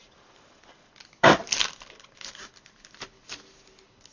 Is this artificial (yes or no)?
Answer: no